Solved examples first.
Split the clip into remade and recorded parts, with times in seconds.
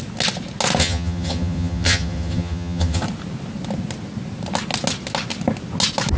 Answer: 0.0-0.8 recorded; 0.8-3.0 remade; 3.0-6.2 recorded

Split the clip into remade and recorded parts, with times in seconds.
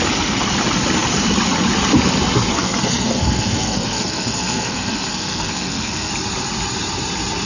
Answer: 0.0-2.5 recorded; 2.5-6.1 remade; 6.1-7.5 recorded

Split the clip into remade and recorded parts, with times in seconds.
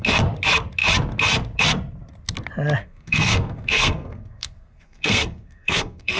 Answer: 0.0-2.8 recorded; 2.8-6.2 remade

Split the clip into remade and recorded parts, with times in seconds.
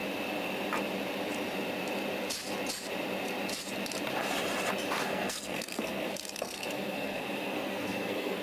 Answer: 0.0-5.0 recorded; 5.0-8.4 remade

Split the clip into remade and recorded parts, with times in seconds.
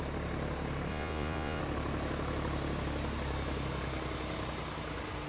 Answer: 0.0-0.9 recorded; 0.9-1.6 remade; 1.6-5.3 recorded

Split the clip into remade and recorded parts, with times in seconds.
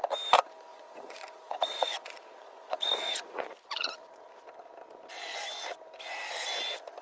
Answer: 0.0-0.7 recorded; 0.7-4.4 remade; 4.4-7.0 recorded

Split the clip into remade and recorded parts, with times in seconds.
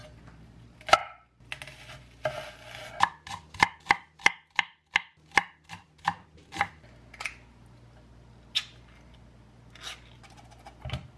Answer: 0.0-11.2 recorded